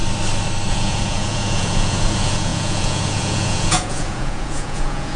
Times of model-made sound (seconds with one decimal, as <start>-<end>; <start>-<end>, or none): 0.7-5.2